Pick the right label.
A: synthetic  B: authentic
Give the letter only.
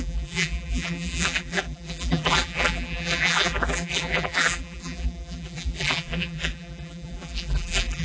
A